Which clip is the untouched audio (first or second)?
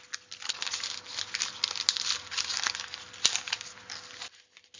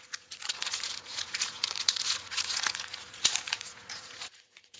first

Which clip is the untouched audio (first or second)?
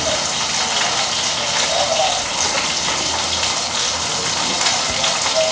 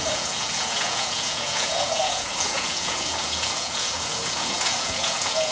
first